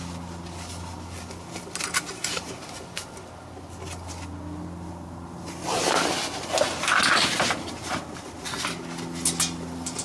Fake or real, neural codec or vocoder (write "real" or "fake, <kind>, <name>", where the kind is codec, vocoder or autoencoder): real